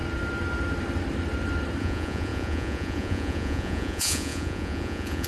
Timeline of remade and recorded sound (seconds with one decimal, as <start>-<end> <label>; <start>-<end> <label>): 0.0-1.8 recorded; 1.8-5.3 remade